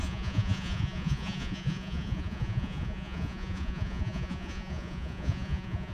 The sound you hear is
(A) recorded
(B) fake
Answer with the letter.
B